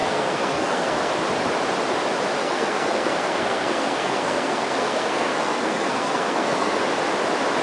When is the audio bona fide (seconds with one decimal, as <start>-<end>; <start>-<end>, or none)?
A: 1.1-2.4; 6.8-7.6